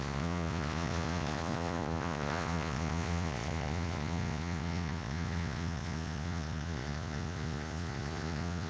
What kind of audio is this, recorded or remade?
remade